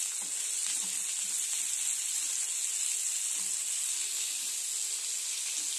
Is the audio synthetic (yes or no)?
no